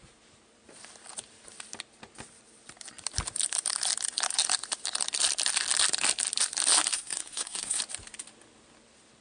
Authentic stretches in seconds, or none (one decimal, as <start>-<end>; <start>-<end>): 0.0-6.9; 7.8-9.2